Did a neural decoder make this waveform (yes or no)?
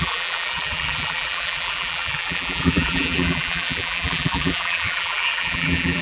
yes